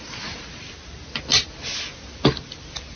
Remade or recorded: recorded